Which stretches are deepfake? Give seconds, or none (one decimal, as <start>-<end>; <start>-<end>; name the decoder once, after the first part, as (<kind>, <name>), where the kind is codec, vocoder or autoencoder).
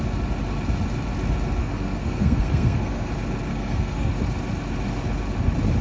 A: 1.6-3.1 (codec, SNAC); 3.5-4.1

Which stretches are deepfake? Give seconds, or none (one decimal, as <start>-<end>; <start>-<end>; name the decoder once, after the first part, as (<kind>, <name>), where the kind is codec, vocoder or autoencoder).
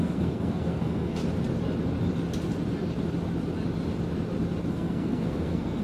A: 0.0-1.2 (codec, SNAC); 4.7-5.8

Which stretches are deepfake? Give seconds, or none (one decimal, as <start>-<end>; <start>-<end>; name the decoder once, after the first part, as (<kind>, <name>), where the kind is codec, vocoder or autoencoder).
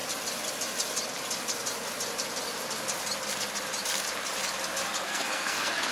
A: 5.0-5.9 (codec, SNAC)